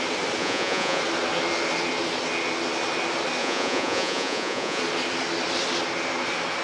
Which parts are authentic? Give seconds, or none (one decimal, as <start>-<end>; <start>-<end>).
0.0-0.4; 1.0-3.4; 4.8-6.6